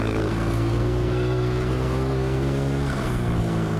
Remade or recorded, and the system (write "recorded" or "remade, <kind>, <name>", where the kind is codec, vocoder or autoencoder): remade, codec, SNAC